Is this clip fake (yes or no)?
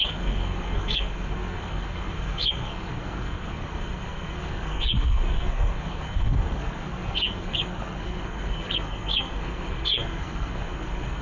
yes